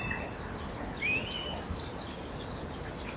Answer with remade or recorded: recorded